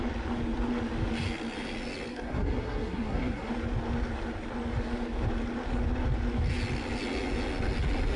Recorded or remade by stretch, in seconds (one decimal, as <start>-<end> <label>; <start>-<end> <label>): 0.0-2.1 recorded; 2.1-3.5 remade; 3.5-8.2 recorded